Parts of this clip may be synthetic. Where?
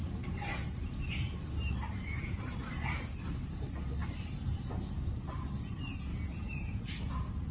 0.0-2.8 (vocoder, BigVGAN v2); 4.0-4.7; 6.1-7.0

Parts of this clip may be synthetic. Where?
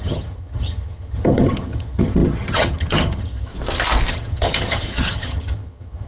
0.0-3.5 (vocoder, HiFi-GAN); 4.1-6.1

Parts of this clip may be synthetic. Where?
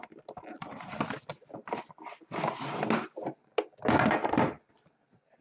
none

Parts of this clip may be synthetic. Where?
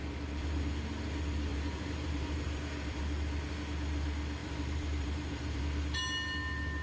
0.0-0.6 (vocoder, BigVGAN v2); 1.5-3.0; 4.4-5.6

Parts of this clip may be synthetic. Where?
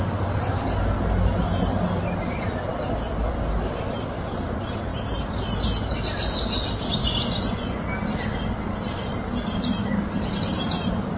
7.0-7.8 (vocoder, Vocos)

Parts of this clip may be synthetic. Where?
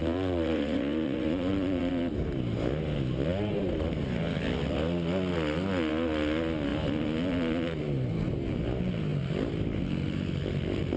0.0-1.9 (vocoder, Vocos)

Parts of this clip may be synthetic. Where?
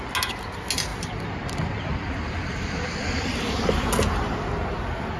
0.9-3.7 (vocoder, BigVGAN v2)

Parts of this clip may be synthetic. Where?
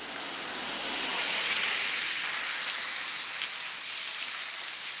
none